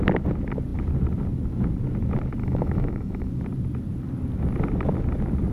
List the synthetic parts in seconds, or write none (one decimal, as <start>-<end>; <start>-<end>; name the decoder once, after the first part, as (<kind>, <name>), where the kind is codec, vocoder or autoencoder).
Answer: 2.4-3.3 (autoencoder, DAC-VAE)